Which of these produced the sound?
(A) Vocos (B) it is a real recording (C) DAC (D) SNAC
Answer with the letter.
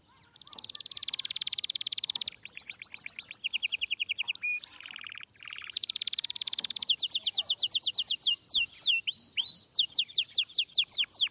B